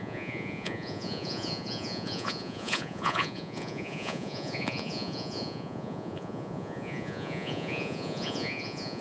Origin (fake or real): fake